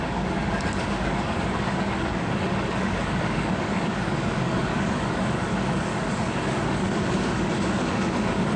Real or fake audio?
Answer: fake